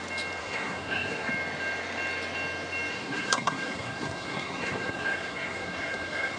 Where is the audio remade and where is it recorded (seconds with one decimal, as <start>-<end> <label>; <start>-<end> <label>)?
0.0-0.4 recorded; 0.4-1.3 remade; 1.3-2.9 recorded; 2.9-6.4 remade